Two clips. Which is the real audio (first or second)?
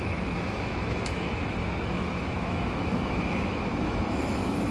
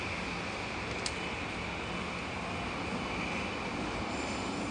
second